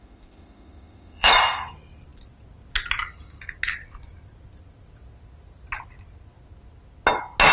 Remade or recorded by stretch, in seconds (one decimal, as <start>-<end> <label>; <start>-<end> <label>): 0.0-1.3 remade; 1.3-7.5 recorded